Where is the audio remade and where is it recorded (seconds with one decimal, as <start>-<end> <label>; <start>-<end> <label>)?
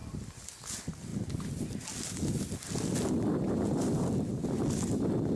0.0-5.4 recorded